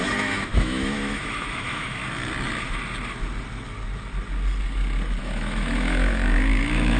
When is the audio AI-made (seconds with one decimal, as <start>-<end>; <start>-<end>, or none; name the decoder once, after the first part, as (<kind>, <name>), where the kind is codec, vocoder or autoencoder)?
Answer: 0.0-2.0 (autoencoder, DAC-VAE); 5.2-7.0